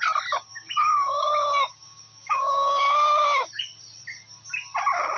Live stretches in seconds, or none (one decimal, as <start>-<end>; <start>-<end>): 0.0-0.5; 3.6-5.2